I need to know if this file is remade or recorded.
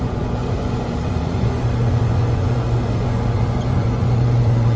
remade